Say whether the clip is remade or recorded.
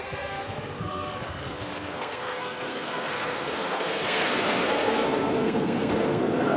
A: remade